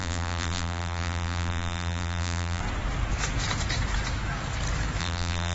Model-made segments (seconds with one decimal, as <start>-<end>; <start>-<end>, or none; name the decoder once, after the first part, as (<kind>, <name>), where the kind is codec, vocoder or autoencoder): 0.0-2.6 (vocoder, BigVGAN v2); 5.0-5.5